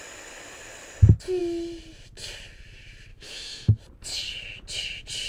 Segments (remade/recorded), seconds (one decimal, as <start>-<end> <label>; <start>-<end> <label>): 0.0-3.1 recorded; 3.1-3.8 remade; 3.8-5.3 recorded